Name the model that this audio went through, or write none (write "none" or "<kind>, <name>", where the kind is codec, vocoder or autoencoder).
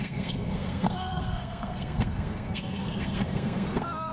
codec, SNAC